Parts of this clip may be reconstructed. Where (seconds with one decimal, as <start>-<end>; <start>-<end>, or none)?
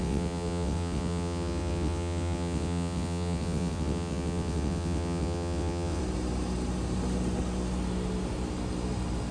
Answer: 0.0-6.0